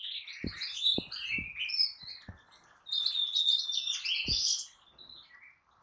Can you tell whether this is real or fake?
real